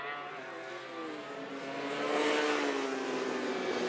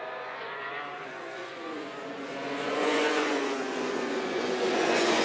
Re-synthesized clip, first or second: second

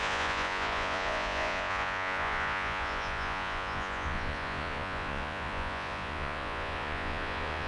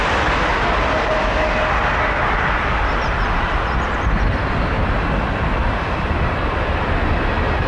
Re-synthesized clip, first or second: first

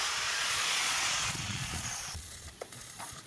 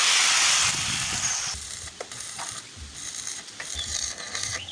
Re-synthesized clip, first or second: first